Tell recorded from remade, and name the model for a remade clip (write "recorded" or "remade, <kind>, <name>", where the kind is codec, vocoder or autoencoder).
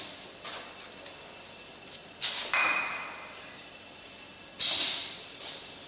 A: recorded